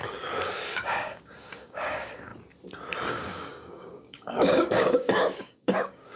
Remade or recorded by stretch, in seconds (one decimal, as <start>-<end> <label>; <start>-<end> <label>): 0.0-2.3 remade; 2.3-3.1 recorded; 3.1-6.2 remade